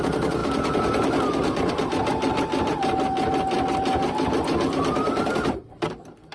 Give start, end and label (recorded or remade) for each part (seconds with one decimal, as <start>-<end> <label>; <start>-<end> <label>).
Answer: 0.0-6.3 recorded